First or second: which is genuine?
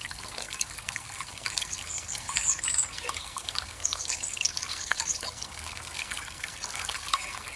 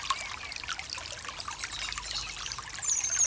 second